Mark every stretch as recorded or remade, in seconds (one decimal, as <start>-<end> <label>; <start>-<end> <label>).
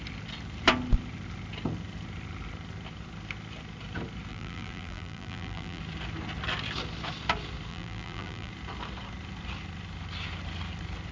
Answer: 0.0-4.3 recorded; 4.3-5.8 remade; 5.8-7.7 recorded; 7.7-8.5 remade; 8.5-11.1 recorded